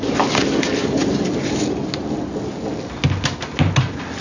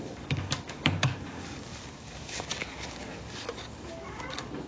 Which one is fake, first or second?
second